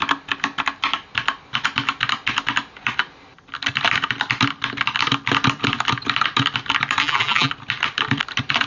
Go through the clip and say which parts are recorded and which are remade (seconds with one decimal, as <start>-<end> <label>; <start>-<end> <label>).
0.0-7.0 recorded; 7.0-7.5 remade; 7.5-8.7 recorded